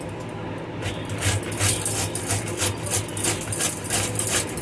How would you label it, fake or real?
real